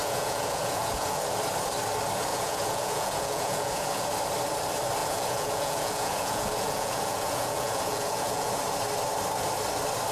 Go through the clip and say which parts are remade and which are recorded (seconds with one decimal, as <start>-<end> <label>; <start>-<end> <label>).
0.0-1.2 remade; 1.2-2.3 recorded; 2.3-4.1 remade; 4.1-5.0 recorded; 5.0-8.5 remade; 8.5-10.1 recorded